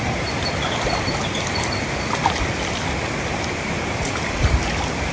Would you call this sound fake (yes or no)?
no